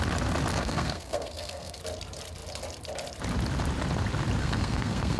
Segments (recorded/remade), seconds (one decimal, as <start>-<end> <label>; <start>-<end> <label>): 0.0-0.5 recorded; 0.5-1.8 remade; 1.8-4.4 recorded; 4.4-5.2 remade